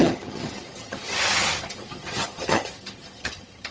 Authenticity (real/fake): fake